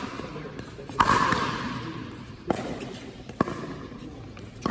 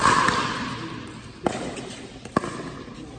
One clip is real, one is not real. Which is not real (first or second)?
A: first